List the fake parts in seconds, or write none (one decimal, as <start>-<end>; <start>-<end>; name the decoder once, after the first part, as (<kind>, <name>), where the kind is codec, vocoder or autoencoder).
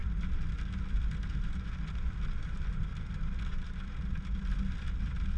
2.9-3.9 (vocoder, BigVGAN v2)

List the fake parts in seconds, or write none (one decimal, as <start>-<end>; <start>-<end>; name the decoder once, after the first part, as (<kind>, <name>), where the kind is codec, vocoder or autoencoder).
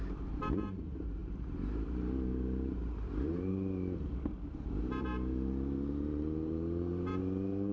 0.0-7.7 (vocoder, BigVGAN v2)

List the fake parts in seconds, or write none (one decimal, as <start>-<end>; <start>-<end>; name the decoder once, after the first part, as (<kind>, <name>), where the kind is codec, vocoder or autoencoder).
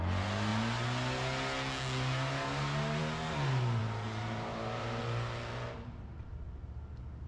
3.8-5.0 (vocoder, BigVGAN v2)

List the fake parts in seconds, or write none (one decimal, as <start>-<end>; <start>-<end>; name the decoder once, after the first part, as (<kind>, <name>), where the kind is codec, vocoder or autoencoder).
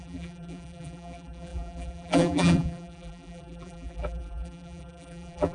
0.0-5.5 (vocoder, BigVGAN v2)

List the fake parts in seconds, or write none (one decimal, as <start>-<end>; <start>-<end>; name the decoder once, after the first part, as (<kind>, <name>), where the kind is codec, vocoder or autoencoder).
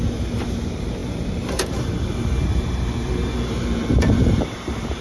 0.0-5.0 (vocoder, BigVGAN v2)